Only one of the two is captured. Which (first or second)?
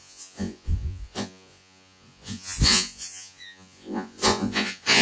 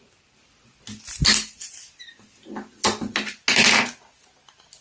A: second